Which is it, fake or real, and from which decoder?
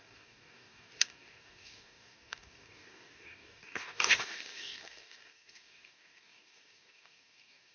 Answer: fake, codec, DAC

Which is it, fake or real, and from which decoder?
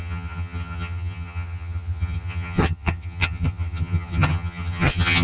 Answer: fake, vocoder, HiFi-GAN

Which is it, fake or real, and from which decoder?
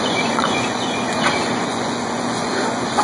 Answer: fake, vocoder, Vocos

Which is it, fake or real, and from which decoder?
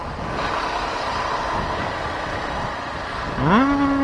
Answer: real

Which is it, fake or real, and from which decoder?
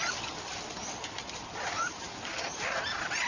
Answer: real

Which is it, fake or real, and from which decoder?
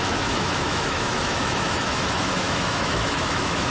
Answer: fake, autoencoder, DAC-VAE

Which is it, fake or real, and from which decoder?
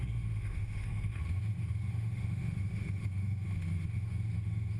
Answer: fake, autoencoder, DAC-VAE